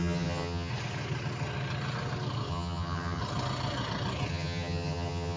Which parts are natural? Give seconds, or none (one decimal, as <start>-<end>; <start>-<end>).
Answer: 0.7-2.5; 3.2-4.3